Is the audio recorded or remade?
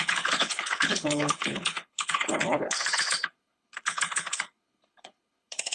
remade